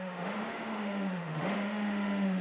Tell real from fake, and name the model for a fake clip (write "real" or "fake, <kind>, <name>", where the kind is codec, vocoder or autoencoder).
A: fake, autoencoder, DAC-VAE